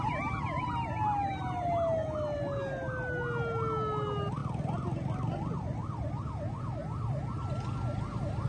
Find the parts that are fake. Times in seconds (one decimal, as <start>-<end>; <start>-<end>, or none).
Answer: none